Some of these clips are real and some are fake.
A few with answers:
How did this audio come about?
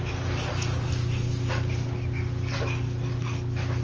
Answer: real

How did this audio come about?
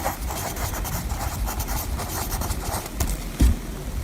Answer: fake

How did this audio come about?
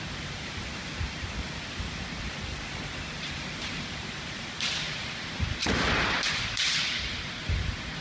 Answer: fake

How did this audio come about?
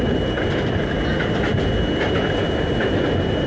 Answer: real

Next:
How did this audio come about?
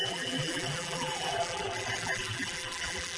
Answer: fake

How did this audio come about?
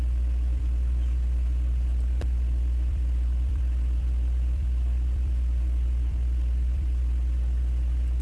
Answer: fake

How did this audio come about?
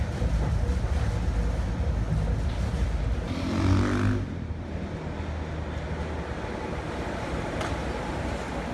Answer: real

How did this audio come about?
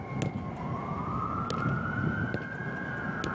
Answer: real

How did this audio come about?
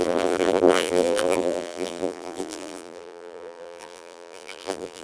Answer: fake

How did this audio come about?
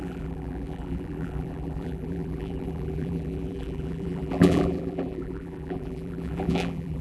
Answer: fake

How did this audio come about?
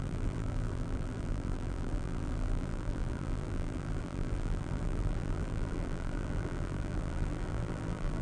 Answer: fake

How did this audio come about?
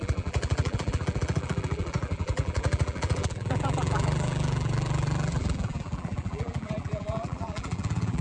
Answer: fake